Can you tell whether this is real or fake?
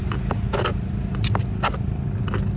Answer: real